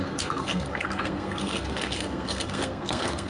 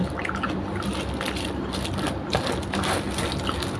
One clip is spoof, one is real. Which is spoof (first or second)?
first